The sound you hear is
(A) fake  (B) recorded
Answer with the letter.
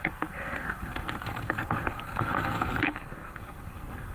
A